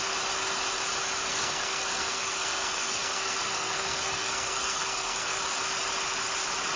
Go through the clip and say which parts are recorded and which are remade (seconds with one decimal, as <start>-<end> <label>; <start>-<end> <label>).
0.0-1.3 recorded; 1.3-5.4 remade; 5.4-6.8 recorded